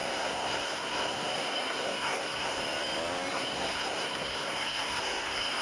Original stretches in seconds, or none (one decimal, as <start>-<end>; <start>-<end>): 2.6-3.3